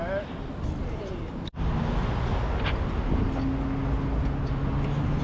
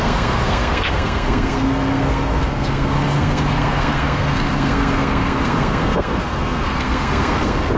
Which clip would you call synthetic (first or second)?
second